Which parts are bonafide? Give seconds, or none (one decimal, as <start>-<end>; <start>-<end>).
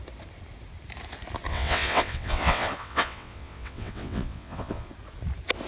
0.0-1.5; 4.9-5.7